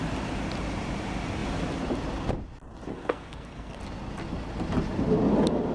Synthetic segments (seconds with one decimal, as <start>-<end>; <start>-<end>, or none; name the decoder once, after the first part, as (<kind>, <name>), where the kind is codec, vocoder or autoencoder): 2.9-3.8 (codec, SNAC)